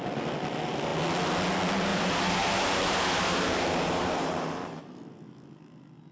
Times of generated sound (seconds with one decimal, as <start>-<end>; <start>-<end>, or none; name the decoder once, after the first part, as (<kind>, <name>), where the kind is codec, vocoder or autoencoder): 1.9-4.8 (vocoder, BigVGAN v2)